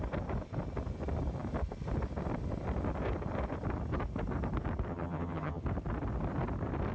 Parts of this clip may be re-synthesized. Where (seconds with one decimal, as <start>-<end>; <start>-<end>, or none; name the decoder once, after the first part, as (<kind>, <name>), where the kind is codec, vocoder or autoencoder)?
4.9-5.6 (vocoder, HiFi-GAN)